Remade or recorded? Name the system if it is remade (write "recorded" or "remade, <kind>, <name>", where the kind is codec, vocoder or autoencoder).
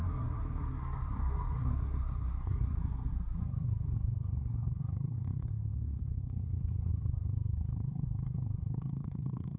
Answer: remade, codec, SNAC